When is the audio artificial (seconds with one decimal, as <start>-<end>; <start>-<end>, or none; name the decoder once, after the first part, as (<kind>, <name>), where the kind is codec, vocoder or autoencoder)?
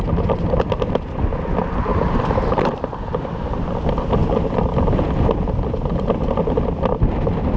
1.9-2.8 (vocoder, BigVGAN v2)